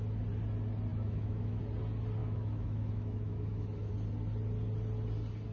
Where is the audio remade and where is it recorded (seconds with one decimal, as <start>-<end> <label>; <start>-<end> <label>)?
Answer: 0.0-0.9 recorded; 0.9-1.6 remade; 1.6-2.2 recorded; 2.2-3.9 remade; 3.9-5.5 recorded